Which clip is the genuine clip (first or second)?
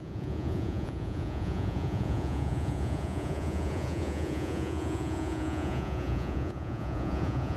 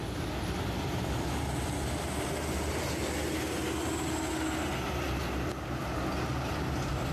second